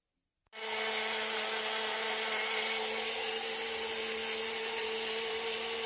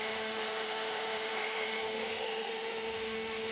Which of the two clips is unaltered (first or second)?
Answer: first